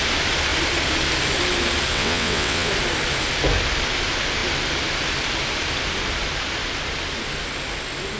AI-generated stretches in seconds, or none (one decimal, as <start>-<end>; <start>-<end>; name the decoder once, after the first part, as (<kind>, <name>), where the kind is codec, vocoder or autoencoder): 1.9-2.7 (vocoder, WaveNeXt)